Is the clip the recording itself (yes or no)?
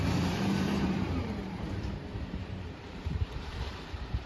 no